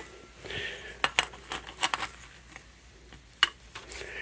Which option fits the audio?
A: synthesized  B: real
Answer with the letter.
B